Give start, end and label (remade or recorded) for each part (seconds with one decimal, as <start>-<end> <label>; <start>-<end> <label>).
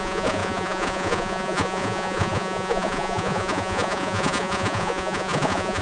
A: 0.0-5.8 remade